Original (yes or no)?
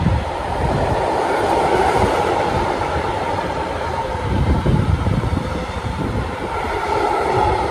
no